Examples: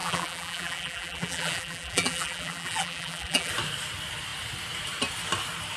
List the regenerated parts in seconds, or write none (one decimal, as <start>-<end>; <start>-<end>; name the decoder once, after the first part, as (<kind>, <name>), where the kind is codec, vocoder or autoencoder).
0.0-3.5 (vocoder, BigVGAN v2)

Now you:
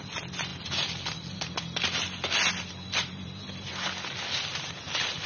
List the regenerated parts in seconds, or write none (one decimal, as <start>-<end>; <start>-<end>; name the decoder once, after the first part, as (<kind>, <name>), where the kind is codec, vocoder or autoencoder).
none

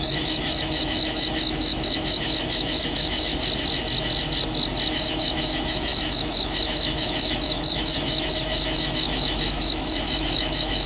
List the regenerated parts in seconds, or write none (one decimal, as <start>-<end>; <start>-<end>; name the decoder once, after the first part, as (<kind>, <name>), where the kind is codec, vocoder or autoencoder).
0.0-3.3 (autoencoder, DAC-VAE); 4.9-10.9

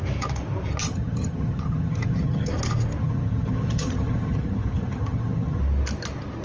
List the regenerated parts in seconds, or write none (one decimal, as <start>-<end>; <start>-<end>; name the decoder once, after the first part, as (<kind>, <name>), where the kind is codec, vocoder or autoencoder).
0.8-2.5 (vocoder, HiFi-GAN); 3.0-5.6

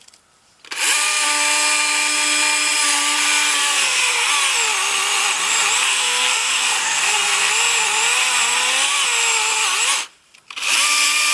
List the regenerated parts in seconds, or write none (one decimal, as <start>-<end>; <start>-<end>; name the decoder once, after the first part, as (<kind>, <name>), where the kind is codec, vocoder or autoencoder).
3.6-4.3 (codec, SNAC); 5.9-7.5

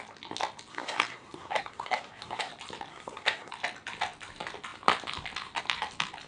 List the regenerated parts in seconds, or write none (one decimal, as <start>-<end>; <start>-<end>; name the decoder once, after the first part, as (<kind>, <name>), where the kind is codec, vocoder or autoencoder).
0.7-2.5 (codec, SNAC); 2.9-3.5